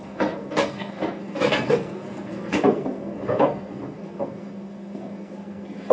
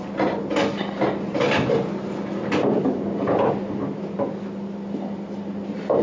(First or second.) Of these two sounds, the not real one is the first